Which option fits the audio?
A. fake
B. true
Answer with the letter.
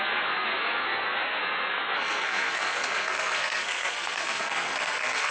A